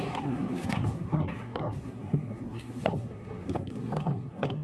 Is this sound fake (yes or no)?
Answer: yes